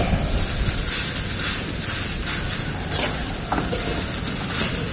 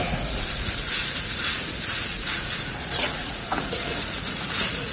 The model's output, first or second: second